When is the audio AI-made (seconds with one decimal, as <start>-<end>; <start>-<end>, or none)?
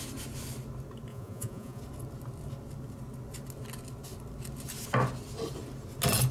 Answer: 1.1-1.8